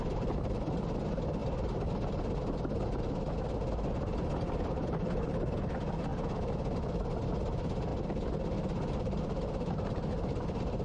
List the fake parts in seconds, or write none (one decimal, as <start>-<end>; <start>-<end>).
7.9-10.1